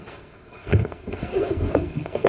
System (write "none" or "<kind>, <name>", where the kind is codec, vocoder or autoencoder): codec, SNAC